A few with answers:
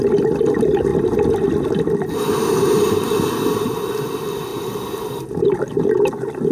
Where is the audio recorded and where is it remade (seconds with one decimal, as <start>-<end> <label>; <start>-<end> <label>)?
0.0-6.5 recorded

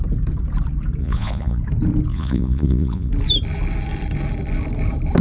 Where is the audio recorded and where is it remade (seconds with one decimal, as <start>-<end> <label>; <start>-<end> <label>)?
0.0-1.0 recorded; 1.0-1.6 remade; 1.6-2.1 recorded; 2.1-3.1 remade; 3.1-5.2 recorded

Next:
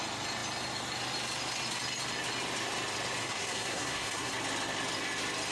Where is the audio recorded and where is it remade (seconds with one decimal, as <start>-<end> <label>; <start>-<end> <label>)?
0.0-3.2 recorded; 3.2-4.3 remade; 4.3-5.5 recorded